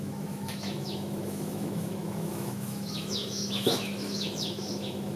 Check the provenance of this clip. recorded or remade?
remade